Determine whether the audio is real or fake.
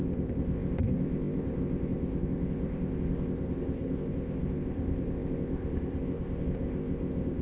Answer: fake